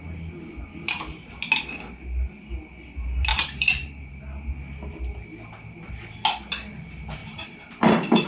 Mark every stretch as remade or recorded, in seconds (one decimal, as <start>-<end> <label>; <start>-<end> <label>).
0.0-3.3 recorded; 3.3-4.1 remade; 4.1-7.2 recorded; 7.2-8.3 remade